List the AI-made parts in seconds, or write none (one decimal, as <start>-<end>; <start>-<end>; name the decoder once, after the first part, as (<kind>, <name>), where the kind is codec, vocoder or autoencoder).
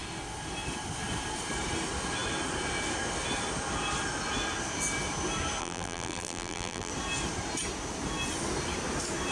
5.6-6.9 (vocoder, BigVGAN v2)